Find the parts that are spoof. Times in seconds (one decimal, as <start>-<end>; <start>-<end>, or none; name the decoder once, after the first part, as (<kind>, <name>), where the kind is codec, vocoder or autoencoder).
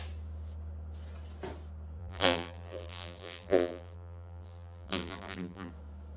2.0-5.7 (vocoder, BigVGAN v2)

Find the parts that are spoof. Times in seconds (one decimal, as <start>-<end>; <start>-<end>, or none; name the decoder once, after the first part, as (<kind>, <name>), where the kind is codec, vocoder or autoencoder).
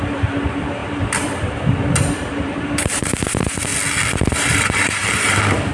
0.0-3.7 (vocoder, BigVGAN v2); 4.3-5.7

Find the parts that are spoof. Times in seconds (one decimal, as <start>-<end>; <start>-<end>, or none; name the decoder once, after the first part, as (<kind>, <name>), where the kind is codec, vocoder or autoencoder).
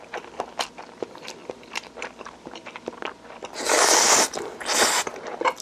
1.4-3.0 (vocoder, BigVGAN v2)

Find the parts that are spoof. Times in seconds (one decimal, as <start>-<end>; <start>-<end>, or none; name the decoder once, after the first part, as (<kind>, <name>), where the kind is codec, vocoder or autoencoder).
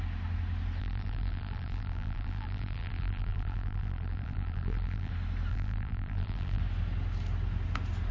0.8-5.1 (vocoder, BigVGAN v2); 5.5-6.6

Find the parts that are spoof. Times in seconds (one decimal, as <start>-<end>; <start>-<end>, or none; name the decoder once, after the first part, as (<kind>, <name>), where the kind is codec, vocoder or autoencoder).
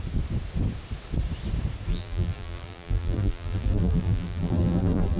1.9-5.2 (vocoder, BigVGAN v2)